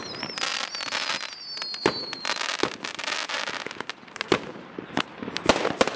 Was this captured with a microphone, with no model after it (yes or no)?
yes